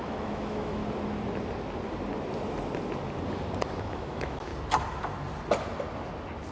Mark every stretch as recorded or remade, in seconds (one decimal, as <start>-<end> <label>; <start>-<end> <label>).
0.0-0.8 remade; 0.8-3.8 recorded; 3.8-4.5 remade; 4.5-6.5 recorded